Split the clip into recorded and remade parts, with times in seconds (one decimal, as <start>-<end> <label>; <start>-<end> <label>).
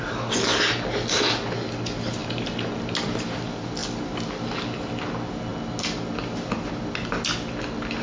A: 0.0-8.0 recorded